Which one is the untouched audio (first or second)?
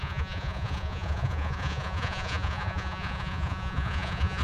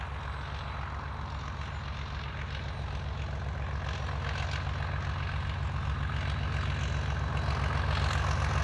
second